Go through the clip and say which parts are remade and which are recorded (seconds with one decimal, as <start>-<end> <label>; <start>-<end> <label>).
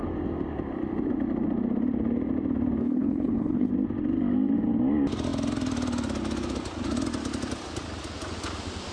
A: 0.0-2.8 recorded; 2.8-3.7 remade; 3.7-8.9 recorded